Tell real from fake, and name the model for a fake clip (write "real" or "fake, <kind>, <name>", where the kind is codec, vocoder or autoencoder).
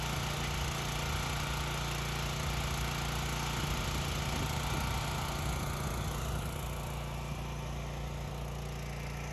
real